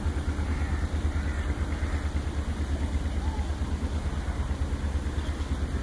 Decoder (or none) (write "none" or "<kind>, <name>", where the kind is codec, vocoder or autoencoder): none